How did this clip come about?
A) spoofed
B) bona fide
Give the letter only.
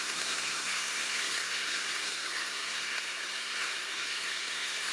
A